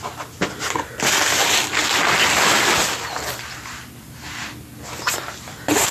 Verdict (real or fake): real